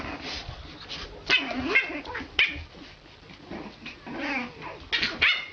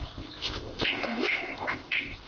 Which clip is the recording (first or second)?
first